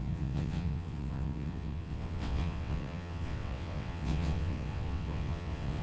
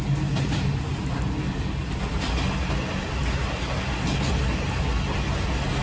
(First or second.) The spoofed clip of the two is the first